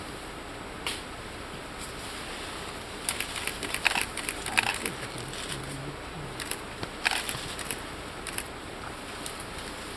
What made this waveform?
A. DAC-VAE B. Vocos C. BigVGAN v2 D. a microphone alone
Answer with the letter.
D